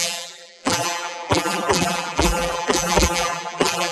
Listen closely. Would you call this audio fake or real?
fake